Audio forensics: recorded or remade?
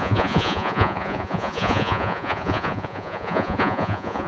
remade